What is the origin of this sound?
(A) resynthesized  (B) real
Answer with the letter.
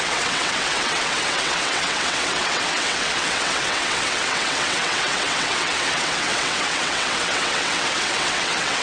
A